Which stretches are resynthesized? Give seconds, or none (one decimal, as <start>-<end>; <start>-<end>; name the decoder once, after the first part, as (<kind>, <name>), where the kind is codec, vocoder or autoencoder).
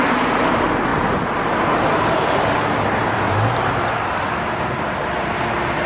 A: none